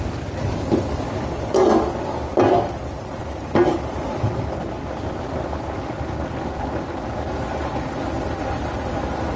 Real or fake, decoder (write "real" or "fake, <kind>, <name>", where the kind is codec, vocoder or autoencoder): real